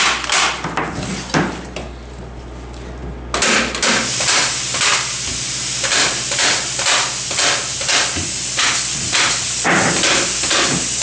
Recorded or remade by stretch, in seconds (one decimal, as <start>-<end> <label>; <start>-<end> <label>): 0.0-11.0 recorded